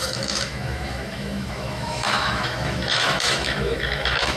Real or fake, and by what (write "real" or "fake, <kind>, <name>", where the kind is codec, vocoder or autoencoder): fake, autoencoder, DAC-VAE